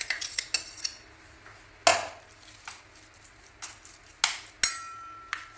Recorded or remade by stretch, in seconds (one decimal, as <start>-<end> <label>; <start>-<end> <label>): 0.0-5.6 recorded